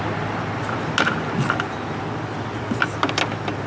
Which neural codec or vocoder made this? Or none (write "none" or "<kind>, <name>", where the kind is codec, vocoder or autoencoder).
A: none